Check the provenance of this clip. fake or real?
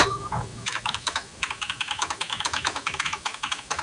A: fake